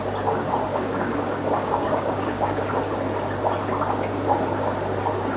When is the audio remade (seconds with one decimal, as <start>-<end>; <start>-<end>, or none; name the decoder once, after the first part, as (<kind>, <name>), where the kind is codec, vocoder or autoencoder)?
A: 0.7-2.7 (codec, DAC)